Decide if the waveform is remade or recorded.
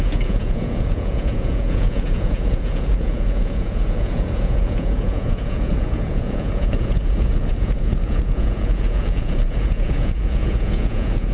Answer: remade